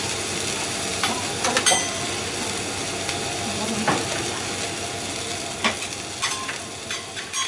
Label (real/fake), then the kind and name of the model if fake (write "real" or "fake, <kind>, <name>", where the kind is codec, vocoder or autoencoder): real